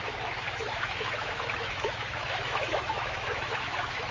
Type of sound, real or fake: fake